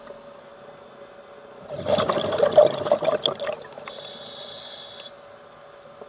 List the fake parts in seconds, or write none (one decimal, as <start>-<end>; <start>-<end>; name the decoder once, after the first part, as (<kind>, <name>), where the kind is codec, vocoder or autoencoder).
0.5-4.2 (vocoder, BigVGAN v2)